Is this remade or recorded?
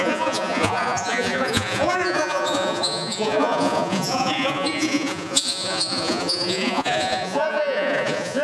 remade